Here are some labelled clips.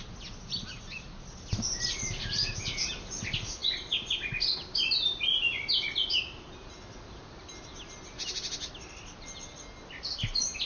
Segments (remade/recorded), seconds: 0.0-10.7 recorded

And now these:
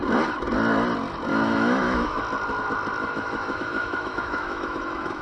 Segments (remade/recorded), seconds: 0.0-1.3 recorded; 1.3-2.2 remade; 2.2-3.0 recorded; 3.0-5.2 remade

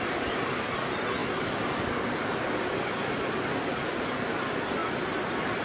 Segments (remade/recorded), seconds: 0.0-1.2 recorded; 1.2-4.0 remade; 4.0-4.8 recorded; 4.8-5.6 remade